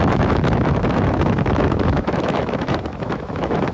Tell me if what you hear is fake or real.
fake